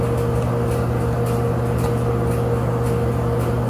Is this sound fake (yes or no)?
no